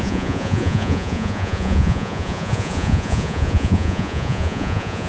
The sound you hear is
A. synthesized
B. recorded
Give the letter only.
A